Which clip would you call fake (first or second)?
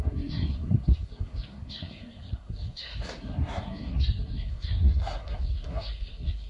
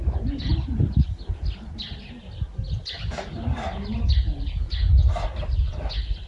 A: first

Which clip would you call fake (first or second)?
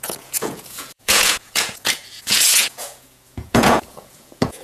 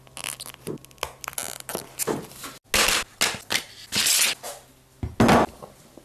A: first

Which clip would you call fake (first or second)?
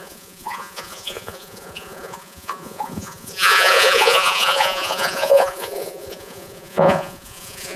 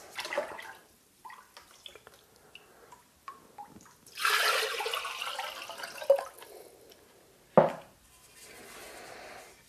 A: first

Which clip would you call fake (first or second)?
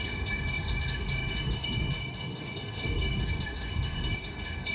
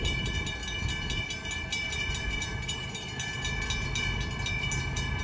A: first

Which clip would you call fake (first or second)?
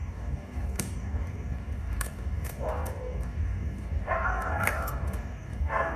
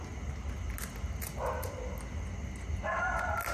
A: first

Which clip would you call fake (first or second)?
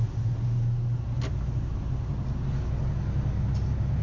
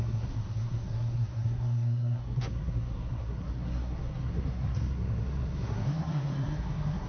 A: second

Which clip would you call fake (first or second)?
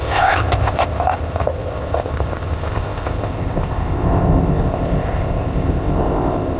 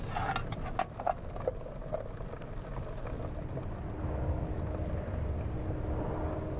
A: first